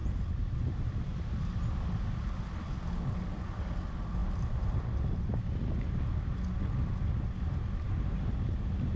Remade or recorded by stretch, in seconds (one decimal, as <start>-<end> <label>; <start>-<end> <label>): 0.0-9.0 recorded